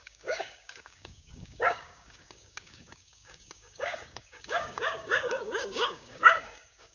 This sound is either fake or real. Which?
fake